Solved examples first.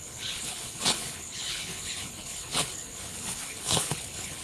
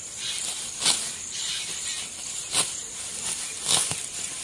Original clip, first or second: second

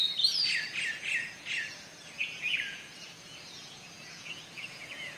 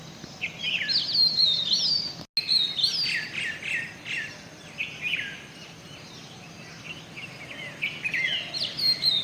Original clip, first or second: second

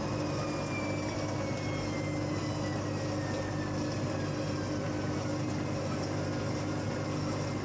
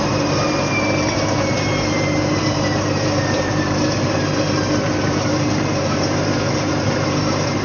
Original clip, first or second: first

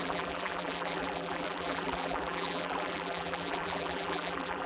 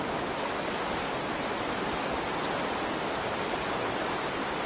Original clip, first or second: second